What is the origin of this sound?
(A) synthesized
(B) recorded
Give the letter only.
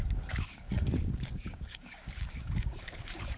A